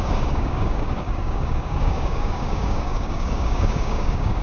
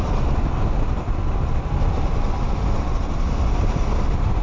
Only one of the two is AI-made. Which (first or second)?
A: first